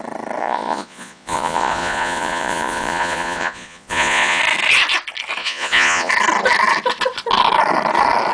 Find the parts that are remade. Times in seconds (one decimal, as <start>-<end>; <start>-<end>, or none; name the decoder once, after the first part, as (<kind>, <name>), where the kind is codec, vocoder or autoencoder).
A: 0.4-4.4 (vocoder, Vocos); 5.4-6.1

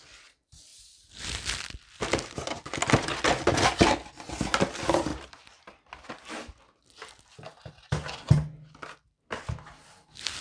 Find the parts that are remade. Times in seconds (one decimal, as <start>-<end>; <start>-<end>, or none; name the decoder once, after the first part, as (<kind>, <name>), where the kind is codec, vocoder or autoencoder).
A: none

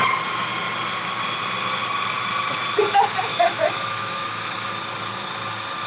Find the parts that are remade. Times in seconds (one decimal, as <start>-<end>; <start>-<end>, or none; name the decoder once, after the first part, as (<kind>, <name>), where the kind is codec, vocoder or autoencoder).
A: 3.3-4.7 (autoencoder, DAC-VAE)

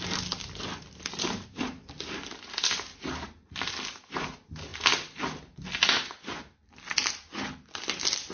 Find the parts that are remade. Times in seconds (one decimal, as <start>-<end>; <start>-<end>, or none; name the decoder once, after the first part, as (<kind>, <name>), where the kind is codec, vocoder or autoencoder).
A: none

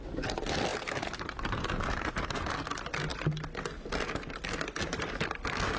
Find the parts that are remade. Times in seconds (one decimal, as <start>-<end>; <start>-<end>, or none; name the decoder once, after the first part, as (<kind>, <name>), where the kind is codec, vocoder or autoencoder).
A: 0.7-2.5 (vocoder, BigVGAN v2)

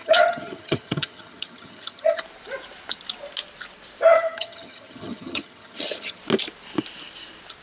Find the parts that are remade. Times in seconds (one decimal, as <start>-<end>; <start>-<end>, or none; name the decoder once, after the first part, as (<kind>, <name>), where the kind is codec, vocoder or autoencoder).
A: 0.0-2.2 (vocoder, HiFi-GAN); 4.1-6.2

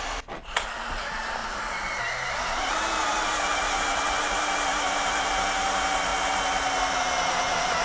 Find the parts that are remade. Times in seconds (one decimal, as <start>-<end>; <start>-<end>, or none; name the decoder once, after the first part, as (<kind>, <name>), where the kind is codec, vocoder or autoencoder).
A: 0.0-6.1 (vocoder, BigVGAN v2); 6.9-7.8